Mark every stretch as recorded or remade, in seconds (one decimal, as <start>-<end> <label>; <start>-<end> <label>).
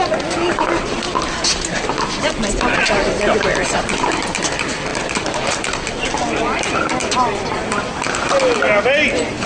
0.0-9.5 recorded